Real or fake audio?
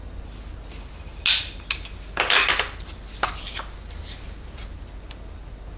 real